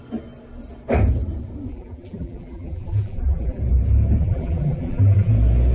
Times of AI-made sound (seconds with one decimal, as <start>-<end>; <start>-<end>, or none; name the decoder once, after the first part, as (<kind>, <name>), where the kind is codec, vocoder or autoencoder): 1.7-3.6 (vocoder, BigVGAN v2); 4.2-5.3